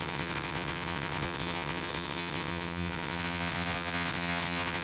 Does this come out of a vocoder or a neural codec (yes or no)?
yes